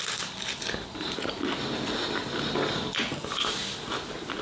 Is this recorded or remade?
recorded